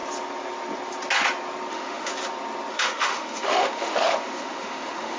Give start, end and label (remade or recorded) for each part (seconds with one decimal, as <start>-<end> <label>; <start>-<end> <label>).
0.0-1.7 recorded; 1.7-2.1 remade; 2.1-2.7 recorded; 2.7-5.2 remade